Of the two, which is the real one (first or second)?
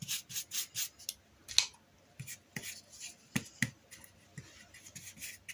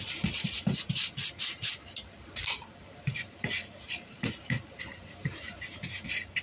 first